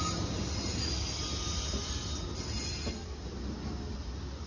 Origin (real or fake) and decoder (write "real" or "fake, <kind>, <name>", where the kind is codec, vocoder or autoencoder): real